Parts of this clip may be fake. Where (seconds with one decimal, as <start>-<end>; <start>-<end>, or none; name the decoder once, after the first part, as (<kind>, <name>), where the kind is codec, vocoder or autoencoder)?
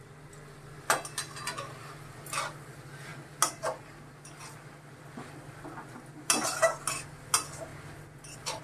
none